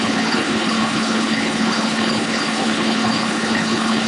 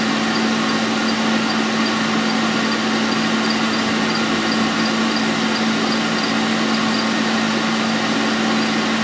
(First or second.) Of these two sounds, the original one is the second